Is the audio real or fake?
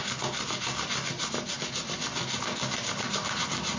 real